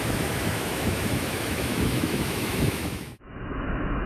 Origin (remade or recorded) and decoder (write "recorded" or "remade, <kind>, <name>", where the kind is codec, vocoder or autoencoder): remade, autoencoder, DAC-VAE